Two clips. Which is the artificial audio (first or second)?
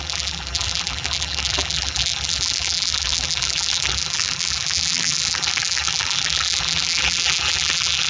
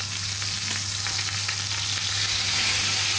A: first